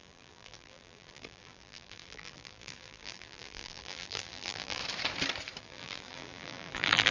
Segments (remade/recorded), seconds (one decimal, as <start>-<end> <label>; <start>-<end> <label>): 0.0-4.8 remade; 4.8-5.6 recorded; 5.6-7.1 remade